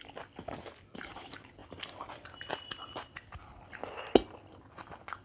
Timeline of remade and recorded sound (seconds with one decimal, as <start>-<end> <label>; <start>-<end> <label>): 0.0-5.2 recorded